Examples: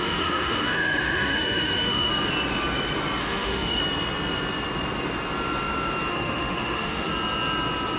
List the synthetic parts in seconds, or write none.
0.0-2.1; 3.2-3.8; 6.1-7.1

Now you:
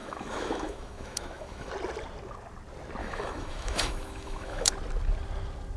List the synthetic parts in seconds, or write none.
0.0-1.7; 3.0-4.7

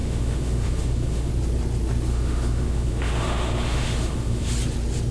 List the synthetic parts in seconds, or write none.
0.0-1.3; 2.1-4.5

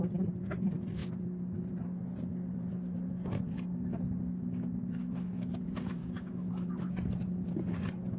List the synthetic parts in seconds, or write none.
5.0-5.6; 6.0-6.9

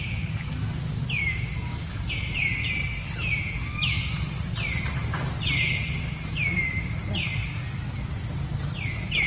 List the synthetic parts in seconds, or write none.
1.2-2.1

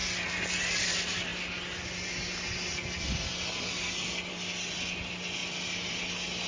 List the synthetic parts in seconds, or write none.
none